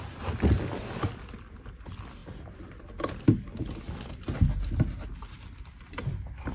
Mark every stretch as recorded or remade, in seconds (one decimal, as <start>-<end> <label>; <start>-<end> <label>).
0.0-6.5 recorded